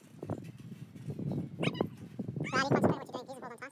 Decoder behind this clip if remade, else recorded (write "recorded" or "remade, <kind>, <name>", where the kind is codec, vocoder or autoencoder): recorded